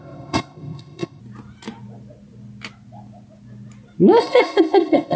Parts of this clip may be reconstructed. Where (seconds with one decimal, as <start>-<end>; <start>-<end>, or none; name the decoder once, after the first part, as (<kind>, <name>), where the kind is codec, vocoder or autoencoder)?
0.0-1.2 (codec, ZipCodec); 4.2-5.2